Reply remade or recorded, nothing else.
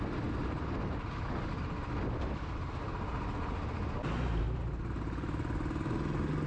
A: recorded